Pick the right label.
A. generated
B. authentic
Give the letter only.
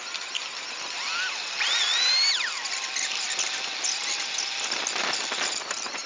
B